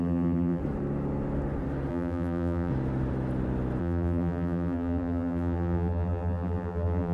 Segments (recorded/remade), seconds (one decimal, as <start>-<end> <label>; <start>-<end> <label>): 0.0-0.6 remade; 0.6-1.9 recorded; 1.9-2.7 remade; 2.7-3.8 recorded; 3.8-7.1 remade